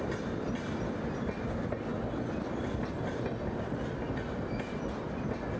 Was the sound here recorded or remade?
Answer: recorded